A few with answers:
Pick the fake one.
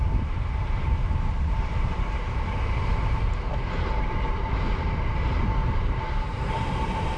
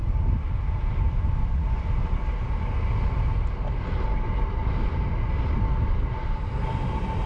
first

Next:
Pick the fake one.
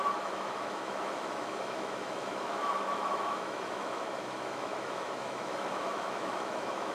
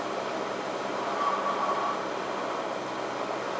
first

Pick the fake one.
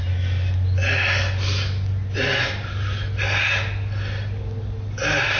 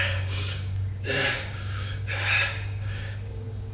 second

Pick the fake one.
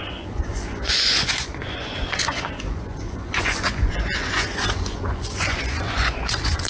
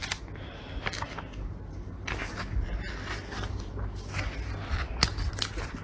first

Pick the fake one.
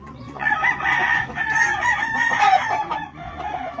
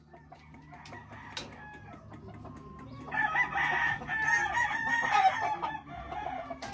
first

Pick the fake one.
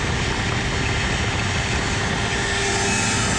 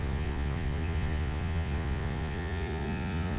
second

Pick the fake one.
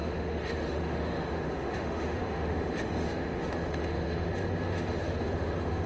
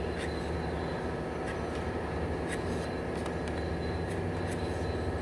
first